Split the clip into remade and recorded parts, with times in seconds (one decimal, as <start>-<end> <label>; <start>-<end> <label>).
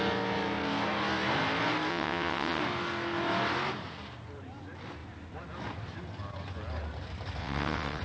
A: 0.0-1.9 recorded; 1.9-2.6 remade; 2.6-7.4 recorded; 7.4-8.0 remade